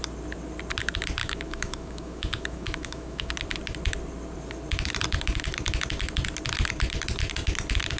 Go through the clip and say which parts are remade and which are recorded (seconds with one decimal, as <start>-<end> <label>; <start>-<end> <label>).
0.0-1.2 recorded; 1.2-3.3 remade; 3.3-8.0 recorded